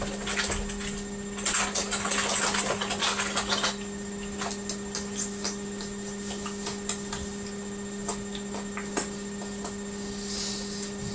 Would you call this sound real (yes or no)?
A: yes